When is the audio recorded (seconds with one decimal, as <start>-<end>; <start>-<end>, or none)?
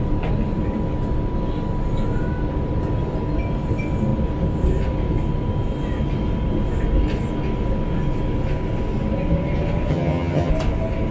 0.0-9.9; 10.5-11.1